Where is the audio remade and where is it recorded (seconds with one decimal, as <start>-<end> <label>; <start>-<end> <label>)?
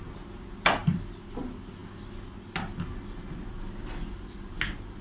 0.0-5.0 recorded